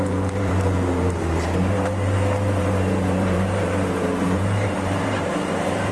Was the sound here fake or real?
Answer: fake